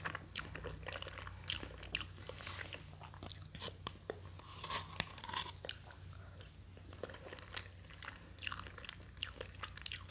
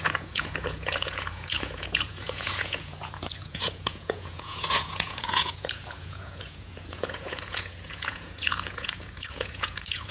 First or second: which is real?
first